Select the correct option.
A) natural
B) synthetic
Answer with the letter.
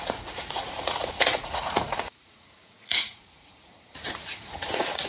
B